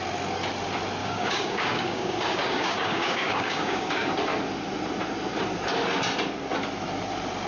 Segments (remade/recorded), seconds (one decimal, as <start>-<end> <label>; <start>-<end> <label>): 0.0-1.0 recorded; 1.0-4.1 remade; 4.1-7.5 recorded